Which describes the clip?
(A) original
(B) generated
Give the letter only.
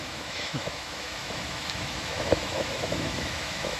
B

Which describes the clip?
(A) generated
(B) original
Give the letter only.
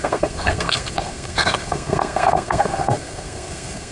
A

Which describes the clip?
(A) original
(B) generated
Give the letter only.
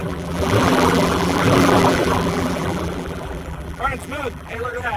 B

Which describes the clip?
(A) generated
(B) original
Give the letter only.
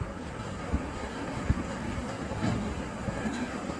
A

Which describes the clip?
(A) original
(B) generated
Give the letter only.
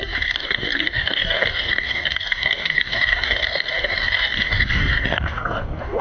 B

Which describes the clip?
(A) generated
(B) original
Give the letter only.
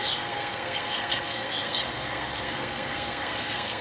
A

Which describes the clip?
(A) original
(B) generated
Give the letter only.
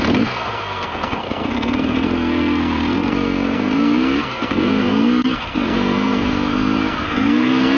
B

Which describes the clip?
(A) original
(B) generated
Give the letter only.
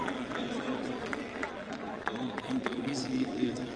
B